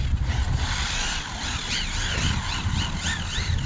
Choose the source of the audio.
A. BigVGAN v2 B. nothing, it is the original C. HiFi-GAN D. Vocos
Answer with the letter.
A